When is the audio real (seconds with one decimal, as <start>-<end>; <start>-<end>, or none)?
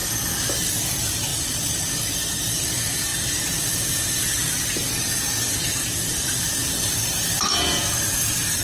0.0-8.6